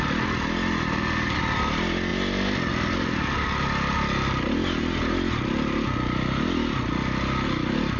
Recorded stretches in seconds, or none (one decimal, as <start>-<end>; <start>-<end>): 0.0-8.0